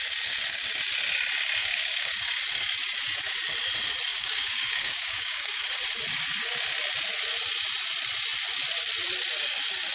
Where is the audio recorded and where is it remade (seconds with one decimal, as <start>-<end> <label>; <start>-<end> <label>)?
0.0-1.6 recorded; 1.6-2.4 remade; 2.4-4.1 recorded; 4.1-5.6 remade; 5.6-9.9 recorded